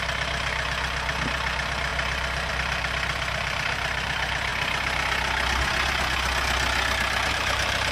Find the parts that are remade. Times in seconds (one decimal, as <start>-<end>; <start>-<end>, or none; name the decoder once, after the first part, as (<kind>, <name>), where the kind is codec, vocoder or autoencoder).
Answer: 0.0-4.5 (vocoder, BigVGAN v2); 7.3-7.9